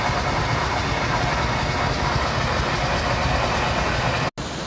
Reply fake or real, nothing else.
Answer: real